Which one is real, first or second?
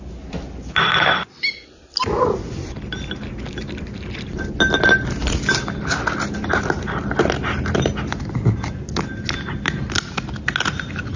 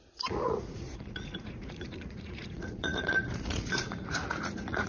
first